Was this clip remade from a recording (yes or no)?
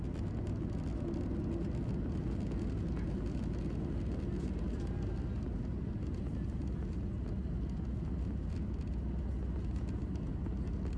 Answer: no